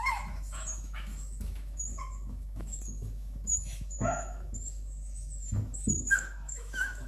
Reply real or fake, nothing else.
fake